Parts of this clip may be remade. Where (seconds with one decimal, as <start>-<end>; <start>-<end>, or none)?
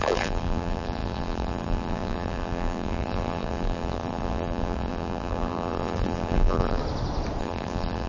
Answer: 0.0-6.8; 7.4-8.1